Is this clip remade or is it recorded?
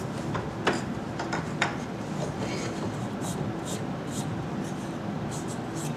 recorded